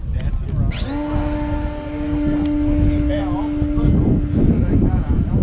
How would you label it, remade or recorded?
recorded